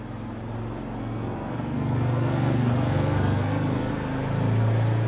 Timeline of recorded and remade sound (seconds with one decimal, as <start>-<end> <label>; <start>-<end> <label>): 0.0-1.0 recorded; 1.0-3.9 remade; 3.9-5.1 recorded